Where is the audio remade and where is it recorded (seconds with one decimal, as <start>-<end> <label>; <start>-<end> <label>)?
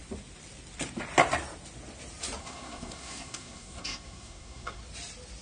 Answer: 0.0-2.4 recorded; 2.4-4.8 remade; 4.8-5.4 recorded